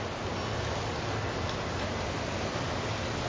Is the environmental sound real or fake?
real